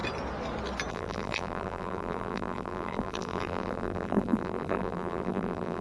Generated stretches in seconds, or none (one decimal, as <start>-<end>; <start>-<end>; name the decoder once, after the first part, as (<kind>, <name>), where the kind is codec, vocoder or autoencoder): 0.9-5.8 (vocoder, BigVGAN v2)